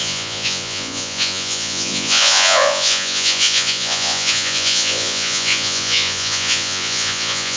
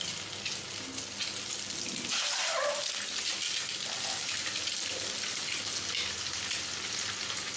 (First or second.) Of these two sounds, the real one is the second